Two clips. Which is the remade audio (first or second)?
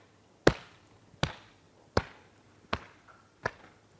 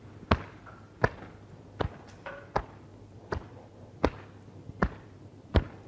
first